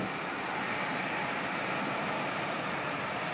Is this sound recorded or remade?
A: recorded